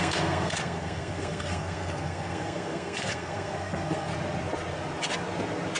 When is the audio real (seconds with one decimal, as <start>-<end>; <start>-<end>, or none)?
4.1-5.8